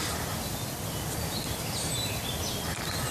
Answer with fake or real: real